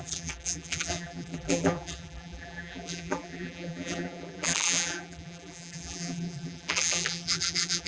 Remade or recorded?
remade